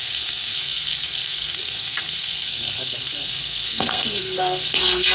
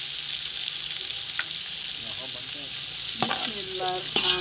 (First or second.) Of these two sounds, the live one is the second